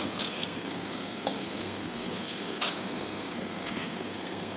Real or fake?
fake